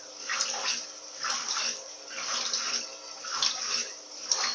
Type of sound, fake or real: real